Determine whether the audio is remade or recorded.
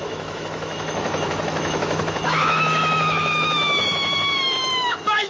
remade